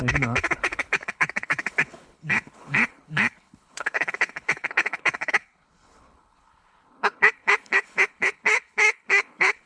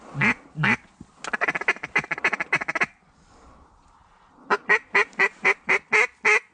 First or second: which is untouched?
second